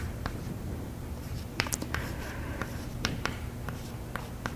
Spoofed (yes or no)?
yes